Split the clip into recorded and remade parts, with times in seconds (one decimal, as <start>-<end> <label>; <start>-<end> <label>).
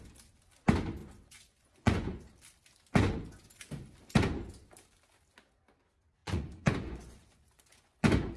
0.0-1.0 recorded; 1.0-2.2 remade; 2.2-6.2 recorded; 6.2-8.4 remade